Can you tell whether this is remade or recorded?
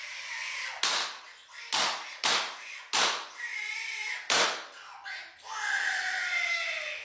recorded